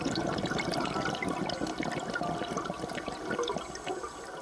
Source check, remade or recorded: recorded